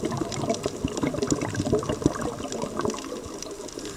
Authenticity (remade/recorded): recorded